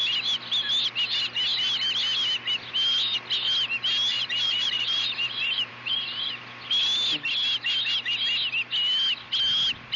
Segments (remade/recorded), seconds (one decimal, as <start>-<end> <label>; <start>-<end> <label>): 0.0-4.1 recorded; 4.1-5.7 remade; 5.7-10.0 recorded

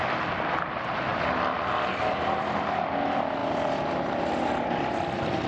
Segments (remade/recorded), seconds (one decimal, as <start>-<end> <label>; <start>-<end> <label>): 0.0-3.4 recorded; 3.4-4.9 remade; 4.9-5.5 recorded

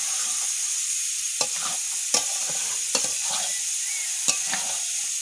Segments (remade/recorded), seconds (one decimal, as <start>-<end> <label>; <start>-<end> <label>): 0.0-3.2 remade; 3.2-4.8 recorded; 4.8-5.2 remade